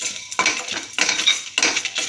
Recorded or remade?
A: recorded